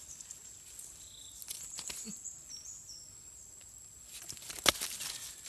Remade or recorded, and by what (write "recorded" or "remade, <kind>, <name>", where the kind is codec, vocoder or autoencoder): recorded